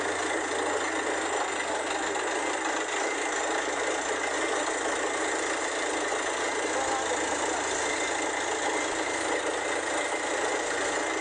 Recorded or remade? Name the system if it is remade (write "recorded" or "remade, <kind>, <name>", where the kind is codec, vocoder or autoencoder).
recorded